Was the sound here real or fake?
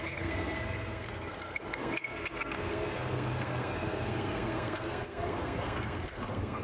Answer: fake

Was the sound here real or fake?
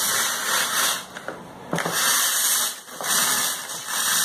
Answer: real